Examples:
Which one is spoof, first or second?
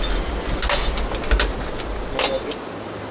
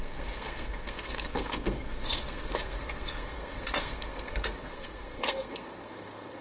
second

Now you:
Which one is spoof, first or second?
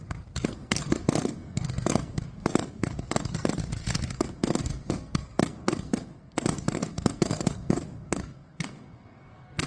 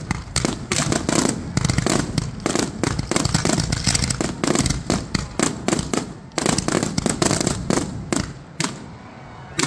first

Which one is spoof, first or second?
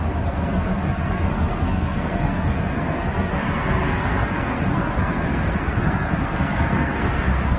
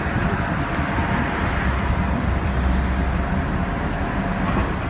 first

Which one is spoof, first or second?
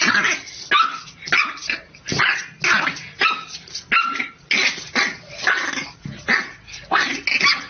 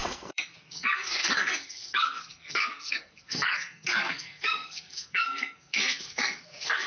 second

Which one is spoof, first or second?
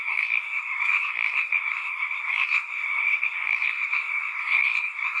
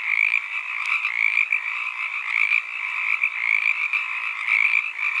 first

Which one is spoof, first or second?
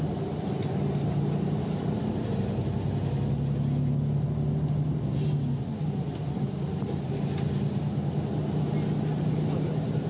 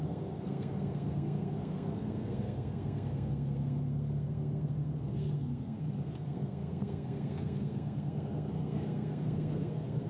second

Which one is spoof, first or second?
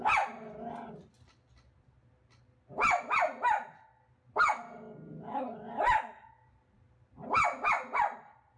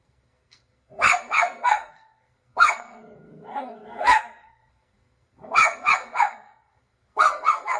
second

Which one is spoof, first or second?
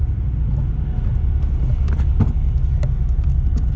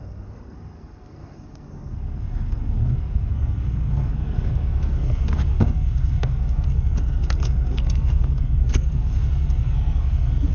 second